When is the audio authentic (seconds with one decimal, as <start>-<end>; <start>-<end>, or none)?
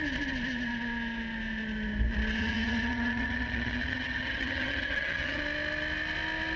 0.0-2.4; 5.4-6.6